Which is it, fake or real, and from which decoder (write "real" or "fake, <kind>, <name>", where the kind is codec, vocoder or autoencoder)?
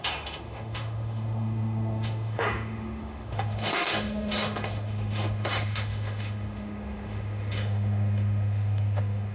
fake, autoencoder, DAC-VAE